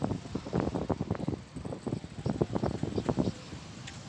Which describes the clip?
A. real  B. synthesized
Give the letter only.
A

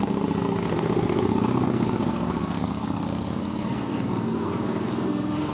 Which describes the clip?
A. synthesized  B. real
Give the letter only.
A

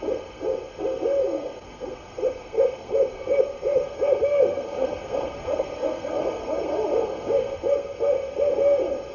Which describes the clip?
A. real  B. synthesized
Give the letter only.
B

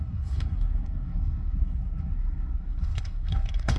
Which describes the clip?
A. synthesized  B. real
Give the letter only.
A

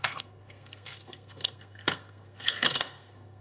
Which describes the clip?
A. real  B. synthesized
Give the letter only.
B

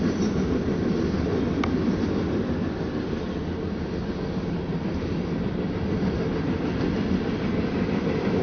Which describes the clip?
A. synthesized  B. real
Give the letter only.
B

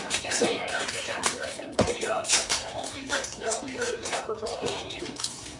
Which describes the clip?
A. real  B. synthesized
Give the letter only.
B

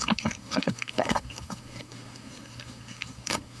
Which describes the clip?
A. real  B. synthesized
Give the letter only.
B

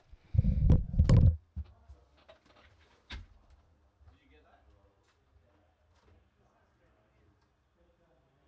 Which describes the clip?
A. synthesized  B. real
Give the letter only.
B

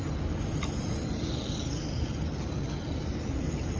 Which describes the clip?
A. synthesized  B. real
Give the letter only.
B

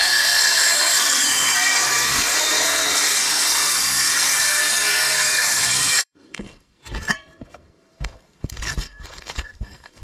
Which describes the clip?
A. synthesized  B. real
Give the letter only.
A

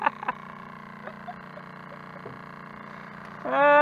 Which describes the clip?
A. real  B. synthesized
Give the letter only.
A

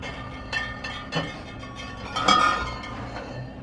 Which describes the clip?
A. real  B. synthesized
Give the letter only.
A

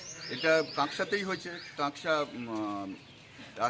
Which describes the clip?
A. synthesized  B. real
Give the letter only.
B